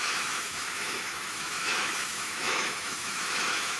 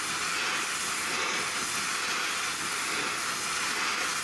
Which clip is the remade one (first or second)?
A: first